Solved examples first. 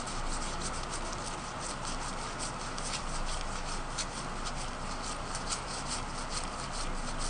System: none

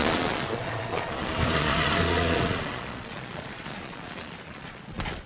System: vocoder, Vocos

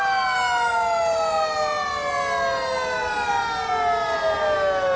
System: none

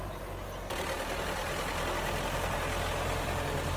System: none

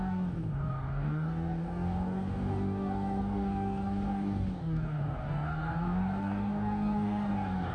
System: codec, DAC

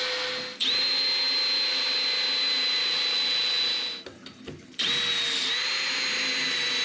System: none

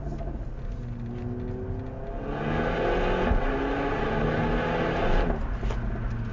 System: none